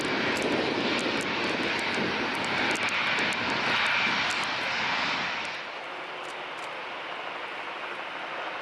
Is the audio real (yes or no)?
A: yes